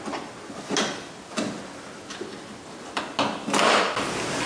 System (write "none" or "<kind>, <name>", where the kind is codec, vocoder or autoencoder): none